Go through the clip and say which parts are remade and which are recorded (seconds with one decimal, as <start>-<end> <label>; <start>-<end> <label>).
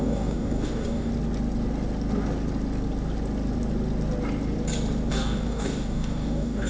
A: 0.0-1.1 remade; 1.1-5.1 recorded; 5.1-6.7 remade